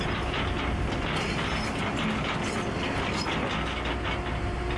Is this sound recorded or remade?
recorded